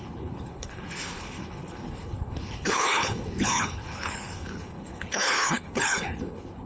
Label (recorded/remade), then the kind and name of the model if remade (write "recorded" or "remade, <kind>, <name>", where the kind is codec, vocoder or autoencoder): remade, codec, HILCodec